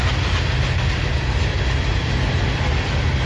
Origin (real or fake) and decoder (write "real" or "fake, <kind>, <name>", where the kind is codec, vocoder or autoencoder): real